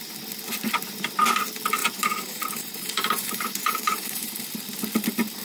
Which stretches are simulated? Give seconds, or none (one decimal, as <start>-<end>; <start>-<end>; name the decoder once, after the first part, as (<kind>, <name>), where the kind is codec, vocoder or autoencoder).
1.8-4.4 (vocoder, BigVGAN v2)